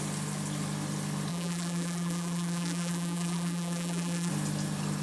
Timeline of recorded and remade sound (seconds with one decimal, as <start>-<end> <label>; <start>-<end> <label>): 0.0-1.3 recorded; 1.3-4.3 remade; 4.3-5.0 recorded